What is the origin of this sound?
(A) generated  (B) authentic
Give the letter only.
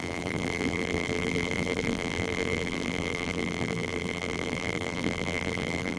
A